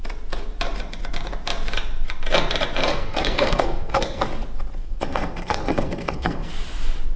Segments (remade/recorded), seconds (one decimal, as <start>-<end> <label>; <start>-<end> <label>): 0.0-2.9 recorded; 2.9-4.2 remade; 4.2-4.8 recorded; 4.8-6.5 remade; 6.5-7.2 recorded